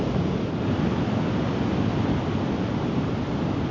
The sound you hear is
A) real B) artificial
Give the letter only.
A